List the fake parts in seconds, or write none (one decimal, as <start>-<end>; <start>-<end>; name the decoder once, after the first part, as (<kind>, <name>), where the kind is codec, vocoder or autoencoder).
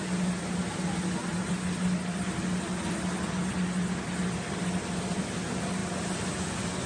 none